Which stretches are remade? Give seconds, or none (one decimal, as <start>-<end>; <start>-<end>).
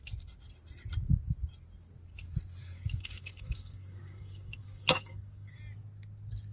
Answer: 2.6-5.6